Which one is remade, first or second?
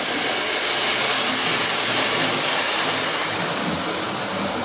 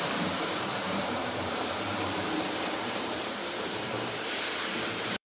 second